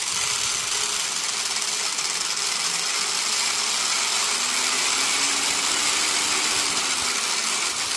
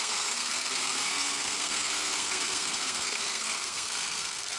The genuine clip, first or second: first